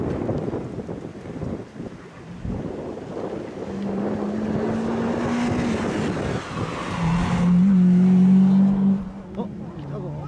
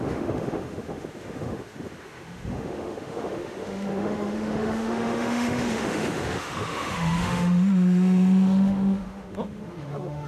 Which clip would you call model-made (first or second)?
second